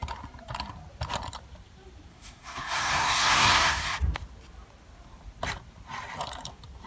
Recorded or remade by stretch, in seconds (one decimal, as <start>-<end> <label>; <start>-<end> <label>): 0.0-2.1 recorded; 2.1-4.0 remade; 4.0-6.9 recorded